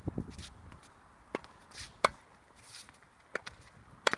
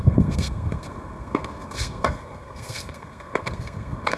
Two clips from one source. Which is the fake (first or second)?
second